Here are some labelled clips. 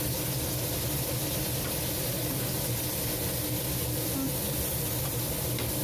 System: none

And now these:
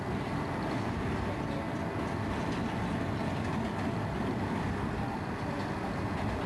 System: none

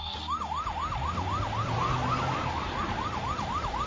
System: none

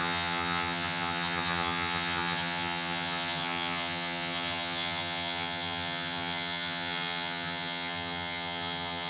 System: vocoder, HiFi-GAN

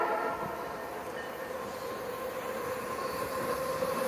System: none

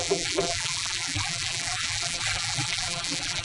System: vocoder, BigVGAN v2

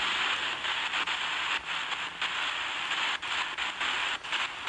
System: none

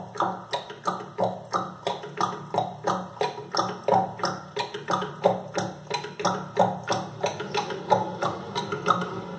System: none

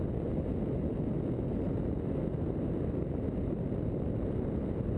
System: none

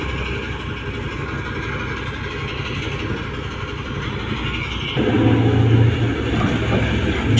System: none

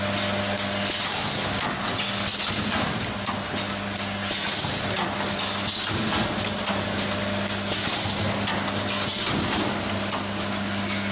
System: none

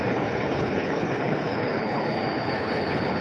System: codec, HILCodec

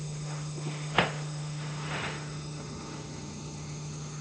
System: autoencoder, DAC-VAE